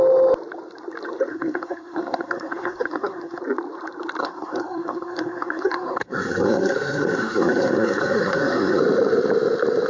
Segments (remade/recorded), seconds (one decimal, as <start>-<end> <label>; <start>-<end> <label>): 0.0-1.3 recorded; 1.3-3.4 remade; 3.4-4.2 recorded; 4.2-8.8 remade; 8.8-9.9 recorded